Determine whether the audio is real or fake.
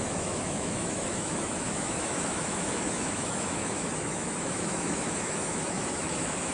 fake